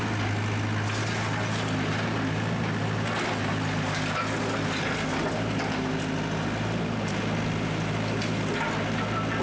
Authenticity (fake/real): real